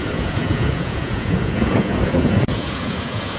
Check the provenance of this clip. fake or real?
fake